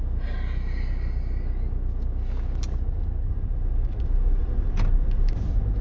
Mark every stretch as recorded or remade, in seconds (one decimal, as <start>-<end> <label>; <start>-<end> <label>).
0.0-4.4 recorded; 4.4-5.8 remade